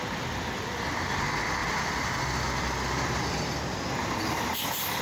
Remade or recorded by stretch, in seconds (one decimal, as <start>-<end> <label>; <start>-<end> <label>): 0.0-5.0 recorded